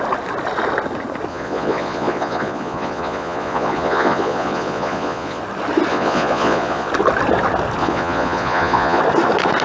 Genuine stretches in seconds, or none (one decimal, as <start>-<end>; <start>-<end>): 0.0-1.3; 5.4-5.9; 6.9-7.8; 9.0-9.6